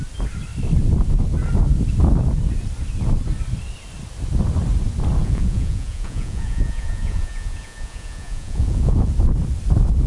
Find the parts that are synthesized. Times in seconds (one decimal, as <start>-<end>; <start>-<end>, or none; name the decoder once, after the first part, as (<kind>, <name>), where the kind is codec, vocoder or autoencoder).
5.2-9.1 (vocoder, Vocos)